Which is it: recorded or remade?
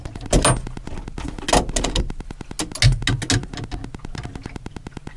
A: recorded